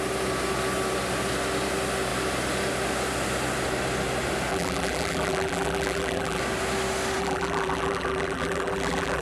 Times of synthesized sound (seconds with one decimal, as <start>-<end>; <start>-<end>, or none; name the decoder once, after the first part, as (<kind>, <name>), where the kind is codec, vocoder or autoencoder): 4.5-6.4 (vocoder, BigVGAN v2); 7.2-9.2